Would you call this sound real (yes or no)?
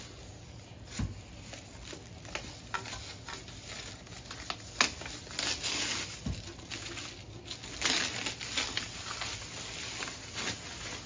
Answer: yes